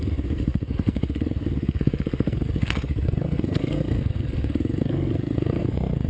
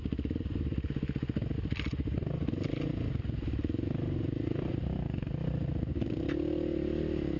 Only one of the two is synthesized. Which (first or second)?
first